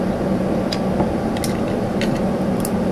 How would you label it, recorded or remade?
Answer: recorded